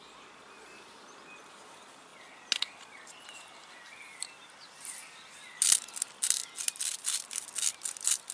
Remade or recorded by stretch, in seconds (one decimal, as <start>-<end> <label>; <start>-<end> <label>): 0.0-8.3 recorded